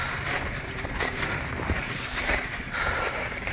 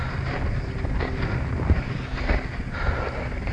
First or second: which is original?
second